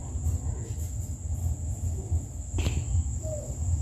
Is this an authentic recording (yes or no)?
yes